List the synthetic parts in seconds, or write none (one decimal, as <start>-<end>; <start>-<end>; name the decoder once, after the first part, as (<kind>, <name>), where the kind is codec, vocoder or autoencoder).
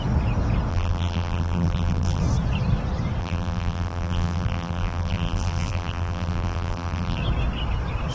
0.7-2.2 (vocoder, BigVGAN v2); 3.2-7.2